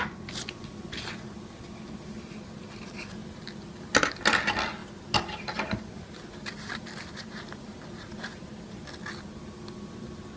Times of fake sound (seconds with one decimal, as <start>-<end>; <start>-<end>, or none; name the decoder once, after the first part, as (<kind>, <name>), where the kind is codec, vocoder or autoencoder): 3.2-3.9 (vocoder, BigVGAN v2)

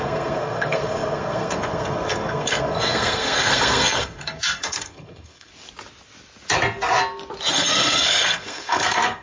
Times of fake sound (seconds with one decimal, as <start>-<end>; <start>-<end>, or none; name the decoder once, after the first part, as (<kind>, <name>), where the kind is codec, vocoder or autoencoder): 0.0-5.5 (codec, SNAC); 7.5-9.2